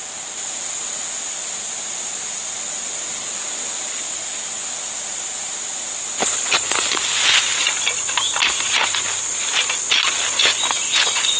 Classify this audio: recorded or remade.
recorded